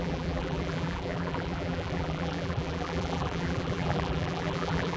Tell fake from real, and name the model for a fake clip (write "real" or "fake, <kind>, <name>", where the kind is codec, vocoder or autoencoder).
fake, vocoder, BigVGAN v2